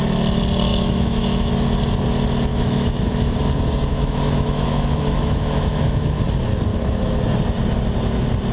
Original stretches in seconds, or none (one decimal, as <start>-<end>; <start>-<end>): 0.0-0.7; 1.5-2.5; 3.4-3.9; 6.2-6.7; 7.2-8.5